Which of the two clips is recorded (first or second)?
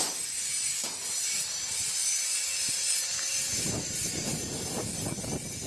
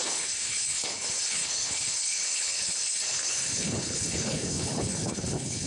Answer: first